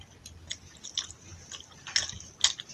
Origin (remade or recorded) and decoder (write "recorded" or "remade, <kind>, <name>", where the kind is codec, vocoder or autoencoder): recorded